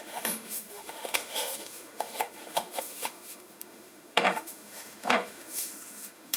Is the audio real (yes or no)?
no